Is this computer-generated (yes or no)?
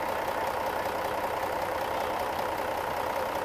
no